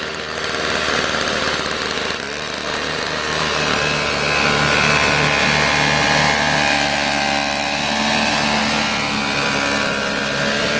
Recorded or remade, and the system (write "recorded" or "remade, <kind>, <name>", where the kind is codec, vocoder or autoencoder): recorded